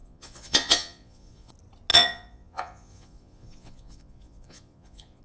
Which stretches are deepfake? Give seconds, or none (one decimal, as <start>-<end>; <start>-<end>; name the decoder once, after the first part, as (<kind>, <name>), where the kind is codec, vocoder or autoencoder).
0.0-1.5 (vocoder, Vocos); 1.9-5.2